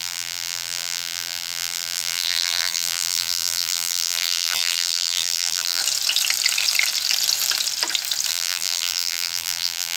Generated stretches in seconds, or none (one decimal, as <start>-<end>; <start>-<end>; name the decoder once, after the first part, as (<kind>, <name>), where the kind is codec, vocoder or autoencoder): 0.0-5.8 (vocoder, BigVGAN v2); 8.3-10.0